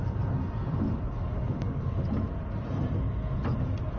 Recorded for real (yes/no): yes